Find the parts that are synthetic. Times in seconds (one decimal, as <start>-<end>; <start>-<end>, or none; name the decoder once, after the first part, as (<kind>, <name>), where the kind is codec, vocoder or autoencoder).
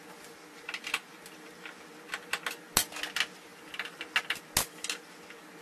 3.5-4.0 (vocoder, BigVGAN v2)